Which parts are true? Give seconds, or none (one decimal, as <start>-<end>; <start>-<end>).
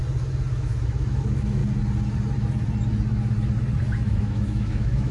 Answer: 0.0-0.5; 1.6-4.1